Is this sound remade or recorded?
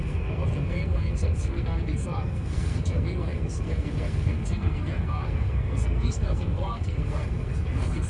remade